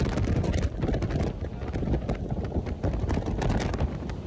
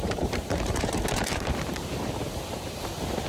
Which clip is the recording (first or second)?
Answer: first